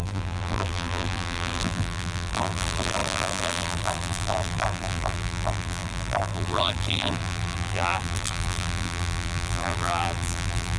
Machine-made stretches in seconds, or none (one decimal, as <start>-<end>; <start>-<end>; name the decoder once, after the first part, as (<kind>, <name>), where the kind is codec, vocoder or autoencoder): 0.0-10.8 (vocoder, BigVGAN v2)